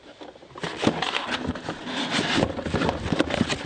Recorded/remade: recorded